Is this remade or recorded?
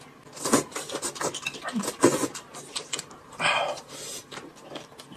remade